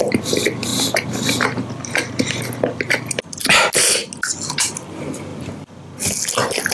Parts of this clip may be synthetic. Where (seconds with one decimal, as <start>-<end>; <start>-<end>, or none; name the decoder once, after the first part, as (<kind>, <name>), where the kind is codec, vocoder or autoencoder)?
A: none